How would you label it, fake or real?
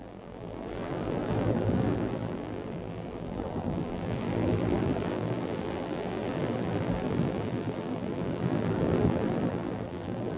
fake